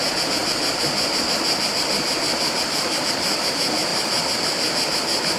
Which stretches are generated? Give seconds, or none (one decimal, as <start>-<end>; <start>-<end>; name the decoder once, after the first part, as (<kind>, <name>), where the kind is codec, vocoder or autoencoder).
0.0-0.4 (vocoder, Vocos); 3.5-3.9

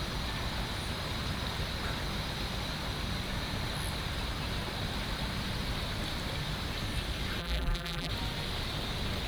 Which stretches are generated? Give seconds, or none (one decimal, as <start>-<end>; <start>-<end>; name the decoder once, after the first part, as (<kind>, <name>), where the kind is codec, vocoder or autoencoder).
7.4-8.1 (vocoder, BigVGAN v2)